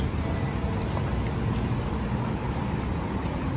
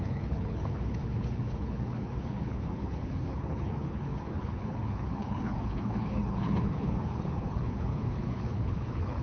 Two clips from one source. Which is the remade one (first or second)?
second